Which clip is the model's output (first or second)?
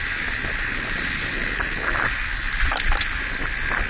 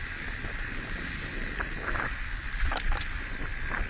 second